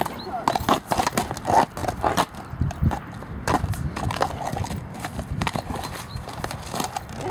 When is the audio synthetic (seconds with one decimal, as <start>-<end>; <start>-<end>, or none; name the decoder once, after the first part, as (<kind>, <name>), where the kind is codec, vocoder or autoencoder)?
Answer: 1.8-4.6 (vocoder, BigVGAN v2); 5.4-6.0